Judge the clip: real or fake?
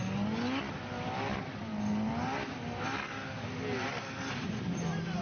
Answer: real